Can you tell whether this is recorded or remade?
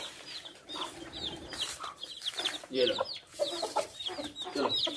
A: remade